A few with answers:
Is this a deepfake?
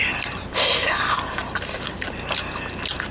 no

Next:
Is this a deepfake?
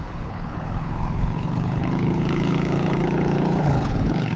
yes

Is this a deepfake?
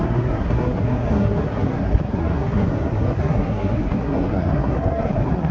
yes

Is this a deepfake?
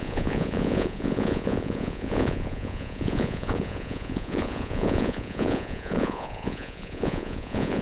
yes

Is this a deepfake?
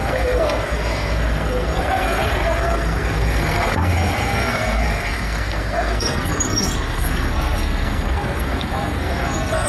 yes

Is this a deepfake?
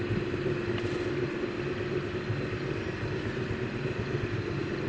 no